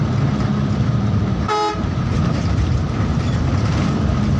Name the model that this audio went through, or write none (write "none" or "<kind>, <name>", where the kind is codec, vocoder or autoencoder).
vocoder, BigVGAN v2